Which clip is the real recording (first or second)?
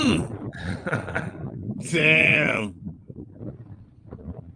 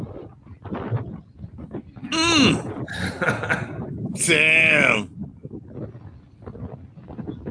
second